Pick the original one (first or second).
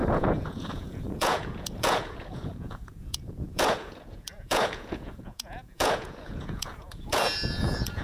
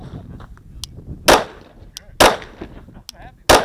second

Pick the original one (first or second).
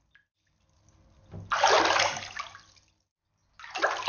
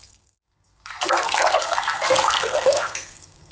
first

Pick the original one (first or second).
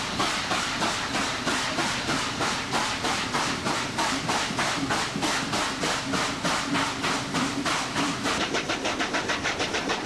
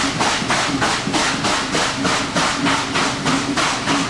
second